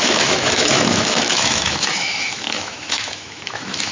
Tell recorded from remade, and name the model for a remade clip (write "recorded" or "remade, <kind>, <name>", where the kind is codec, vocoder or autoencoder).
remade, autoencoder, DAC-VAE